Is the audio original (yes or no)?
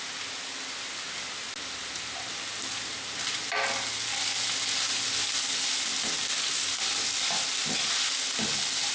yes